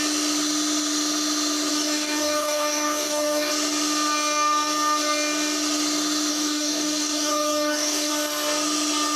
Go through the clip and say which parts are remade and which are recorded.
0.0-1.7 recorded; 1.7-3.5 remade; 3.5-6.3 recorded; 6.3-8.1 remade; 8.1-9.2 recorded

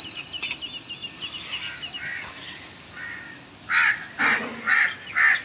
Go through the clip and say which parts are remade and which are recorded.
0.0-5.4 recorded

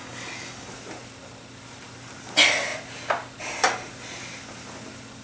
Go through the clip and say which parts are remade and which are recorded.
0.0-0.7 remade; 0.7-5.2 recorded

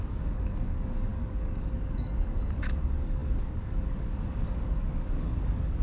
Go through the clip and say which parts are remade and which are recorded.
0.0-5.8 remade